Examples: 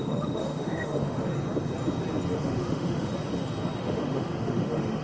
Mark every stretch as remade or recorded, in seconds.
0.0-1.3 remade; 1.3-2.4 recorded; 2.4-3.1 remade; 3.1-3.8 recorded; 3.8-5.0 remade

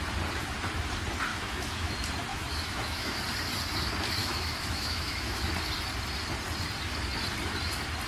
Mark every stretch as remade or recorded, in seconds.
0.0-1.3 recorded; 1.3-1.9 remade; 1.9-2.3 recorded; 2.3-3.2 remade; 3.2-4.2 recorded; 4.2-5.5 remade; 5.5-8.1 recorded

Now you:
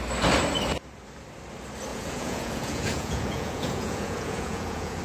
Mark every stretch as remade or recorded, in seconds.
0.0-1.9 recorded; 1.9-5.0 remade

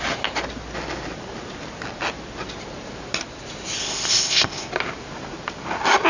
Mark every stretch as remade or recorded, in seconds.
0.0-3.8 recorded; 3.8-4.7 remade; 4.7-6.1 recorded